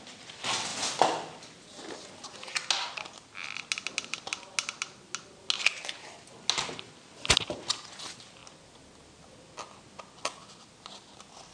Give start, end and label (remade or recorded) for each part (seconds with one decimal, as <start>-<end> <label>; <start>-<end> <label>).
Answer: 0.0-11.5 recorded